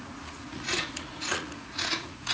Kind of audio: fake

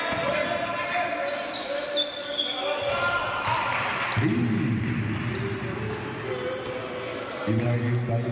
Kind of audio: real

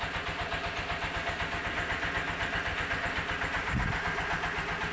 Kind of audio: real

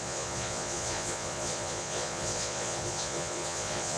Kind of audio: fake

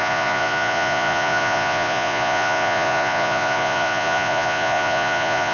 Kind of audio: fake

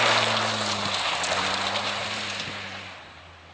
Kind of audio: real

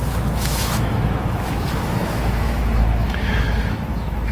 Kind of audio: fake